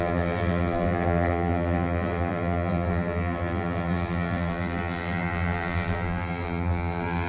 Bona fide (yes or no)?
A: no